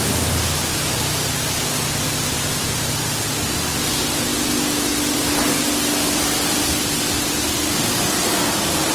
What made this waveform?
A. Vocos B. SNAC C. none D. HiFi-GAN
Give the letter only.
C